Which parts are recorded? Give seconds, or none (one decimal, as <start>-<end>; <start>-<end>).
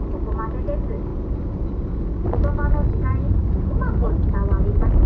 0.0-5.1